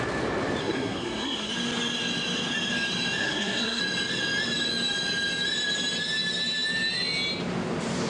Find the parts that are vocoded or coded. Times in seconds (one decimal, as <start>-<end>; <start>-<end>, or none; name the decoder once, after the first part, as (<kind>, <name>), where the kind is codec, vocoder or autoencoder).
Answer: 0.6-1.5 (codec, SNAC); 3.2-3.8